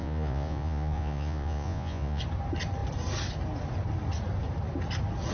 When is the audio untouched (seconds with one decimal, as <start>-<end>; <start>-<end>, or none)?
2.2-5.3